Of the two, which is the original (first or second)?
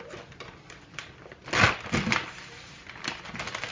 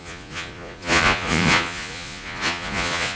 first